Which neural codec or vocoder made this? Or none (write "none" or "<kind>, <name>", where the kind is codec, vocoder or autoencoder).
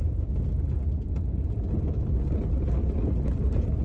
none